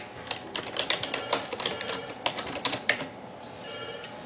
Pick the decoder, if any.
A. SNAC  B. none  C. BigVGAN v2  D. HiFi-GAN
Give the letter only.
B